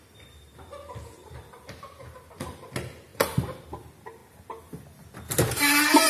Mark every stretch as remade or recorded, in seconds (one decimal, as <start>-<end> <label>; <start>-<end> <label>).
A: 0.0-1.2 recorded; 1.2-2.7 remade; 2.7-3.1 recorded; 3.1-3.6 remade; 3.6-6.1 recorded